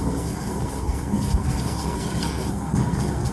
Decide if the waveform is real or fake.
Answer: fake